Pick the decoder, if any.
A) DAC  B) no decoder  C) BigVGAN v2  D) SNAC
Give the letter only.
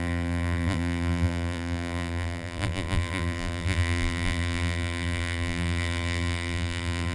C